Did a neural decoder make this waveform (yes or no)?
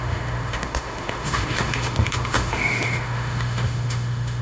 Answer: yes